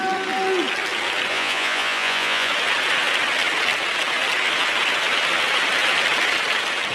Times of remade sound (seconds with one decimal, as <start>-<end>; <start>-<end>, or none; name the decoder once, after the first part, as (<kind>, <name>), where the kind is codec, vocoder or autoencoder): 1.3-2.5 (vocoder, Vocos)